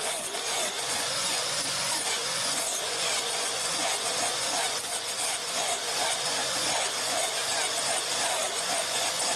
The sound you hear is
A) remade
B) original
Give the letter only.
A